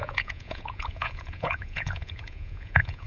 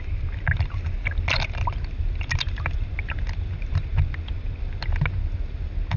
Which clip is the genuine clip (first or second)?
second